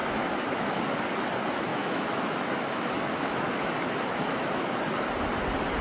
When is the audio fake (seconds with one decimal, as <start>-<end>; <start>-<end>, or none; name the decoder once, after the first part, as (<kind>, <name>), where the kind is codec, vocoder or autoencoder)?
0.0-0.8 (autoencoder, DAC-VAE); 1.7-4.8